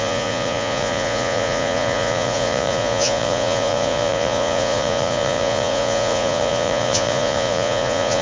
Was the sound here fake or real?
fake